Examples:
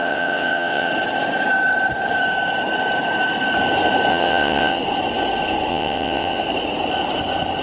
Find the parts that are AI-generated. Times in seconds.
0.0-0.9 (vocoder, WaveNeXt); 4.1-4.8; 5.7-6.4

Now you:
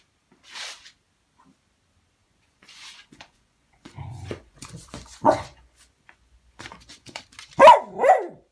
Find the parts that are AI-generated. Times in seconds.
2.2-7.2 (vocoder, Vocos)

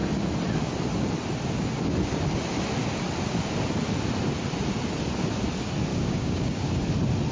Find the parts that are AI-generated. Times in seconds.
5.9-6.7 (codec, DAC)